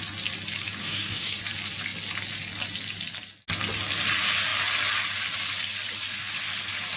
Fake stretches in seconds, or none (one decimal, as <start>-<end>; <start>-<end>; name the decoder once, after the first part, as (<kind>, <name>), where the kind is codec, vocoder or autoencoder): 0.8-1.4 (codec, DAC)